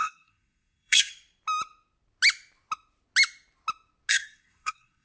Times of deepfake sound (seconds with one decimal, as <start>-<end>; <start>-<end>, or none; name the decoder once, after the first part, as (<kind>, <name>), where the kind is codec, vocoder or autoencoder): 0.0-1.1 (codec, SNAC); 4.1-5.0